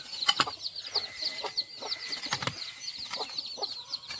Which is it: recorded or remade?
recorded